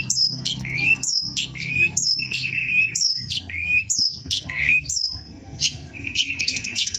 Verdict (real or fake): fake